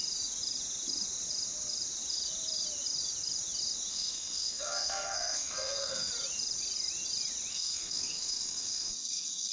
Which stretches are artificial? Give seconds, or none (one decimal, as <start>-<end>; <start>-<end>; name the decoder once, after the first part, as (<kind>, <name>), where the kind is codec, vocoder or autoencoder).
3.9-6.1 (codec, SNAC); 7.5-9.5